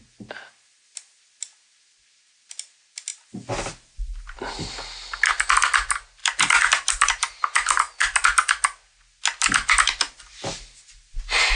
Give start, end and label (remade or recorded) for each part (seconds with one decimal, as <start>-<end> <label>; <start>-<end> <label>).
0.0-6.2 recorded; 6.2-7.8 remade; 7.8-11.6 recorded